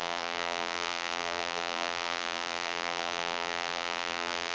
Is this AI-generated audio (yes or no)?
yes